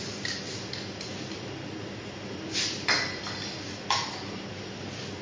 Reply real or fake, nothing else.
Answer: real